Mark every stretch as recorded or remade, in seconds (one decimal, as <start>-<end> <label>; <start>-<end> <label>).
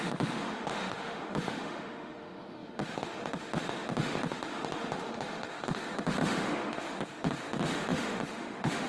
0.0-8.9 remade